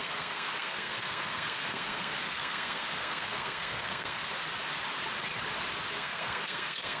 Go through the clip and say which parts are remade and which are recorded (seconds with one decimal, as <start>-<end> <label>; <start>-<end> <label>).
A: 0.0-4.3 remade; 4.3-5.9 recorded; 5.9-7.0 remade